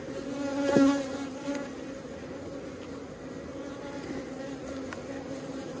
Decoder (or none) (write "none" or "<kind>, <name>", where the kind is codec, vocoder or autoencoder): none